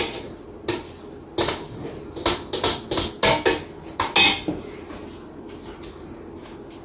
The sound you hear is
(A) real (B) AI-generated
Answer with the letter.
A